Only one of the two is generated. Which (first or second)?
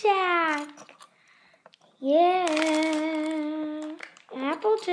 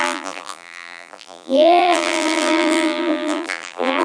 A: second